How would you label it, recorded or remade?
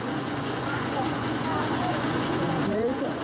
remade